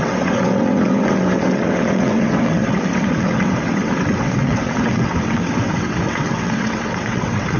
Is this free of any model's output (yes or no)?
no